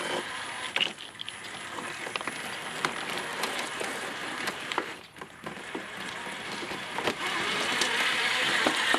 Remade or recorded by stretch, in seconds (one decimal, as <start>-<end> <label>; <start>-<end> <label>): 0.0-3.3 recorded; 3.3-7.4 remade; 7.4-9.0 recorded